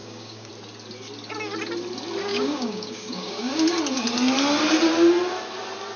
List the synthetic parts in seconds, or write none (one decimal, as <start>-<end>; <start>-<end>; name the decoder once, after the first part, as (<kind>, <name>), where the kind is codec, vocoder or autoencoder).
0.0-0.5 (codec, DAC); 2.3-3.5